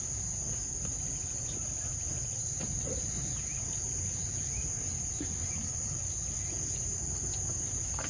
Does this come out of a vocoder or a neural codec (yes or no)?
no